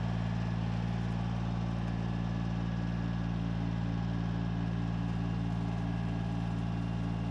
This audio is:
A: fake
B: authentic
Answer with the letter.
B